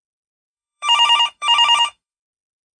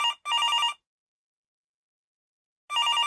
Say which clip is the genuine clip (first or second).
second